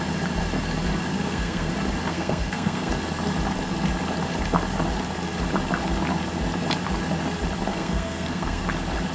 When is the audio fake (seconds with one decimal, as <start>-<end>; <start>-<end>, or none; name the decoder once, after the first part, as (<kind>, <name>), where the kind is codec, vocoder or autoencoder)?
1.1-1.7 (codec, SNAC); 2.1-2.9; 7.7-8.6